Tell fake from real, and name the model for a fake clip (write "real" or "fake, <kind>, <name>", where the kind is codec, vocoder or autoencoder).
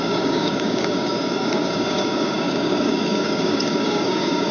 fake, codec, DAC